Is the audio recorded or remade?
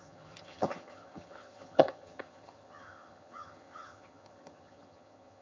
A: remade